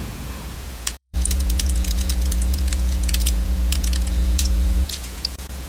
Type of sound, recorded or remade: remade